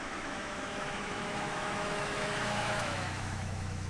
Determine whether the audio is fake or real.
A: fake